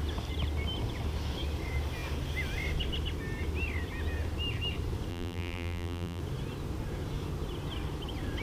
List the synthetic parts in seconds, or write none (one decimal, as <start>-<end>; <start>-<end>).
5.1-6.2